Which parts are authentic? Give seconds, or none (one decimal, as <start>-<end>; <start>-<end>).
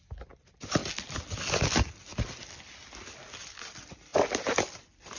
0.0-5.2